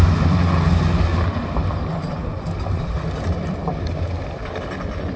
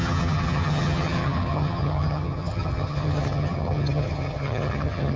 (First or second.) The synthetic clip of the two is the second